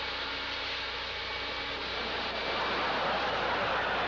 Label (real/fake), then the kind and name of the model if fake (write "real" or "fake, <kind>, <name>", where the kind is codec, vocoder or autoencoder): real